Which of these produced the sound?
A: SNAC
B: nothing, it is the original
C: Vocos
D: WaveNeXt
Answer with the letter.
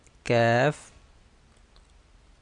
B